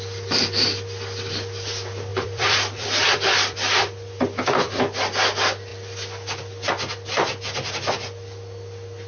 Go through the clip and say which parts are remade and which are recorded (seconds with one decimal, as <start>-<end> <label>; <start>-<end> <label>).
0.0-2.1 recorded; 2.1-4.8 remade; 4.8-9.1 recorded